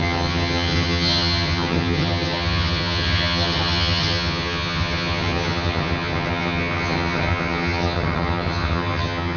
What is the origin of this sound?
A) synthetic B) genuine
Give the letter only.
A